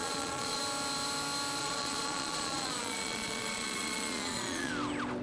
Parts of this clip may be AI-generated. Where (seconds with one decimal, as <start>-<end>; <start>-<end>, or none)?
0.0-0.6; 1.6-4.7